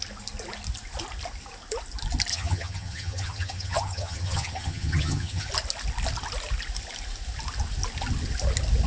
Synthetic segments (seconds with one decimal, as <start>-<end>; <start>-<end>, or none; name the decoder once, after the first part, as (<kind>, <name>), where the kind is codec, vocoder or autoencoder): 2.3-5.5 (vocoder, HiFi-GAN)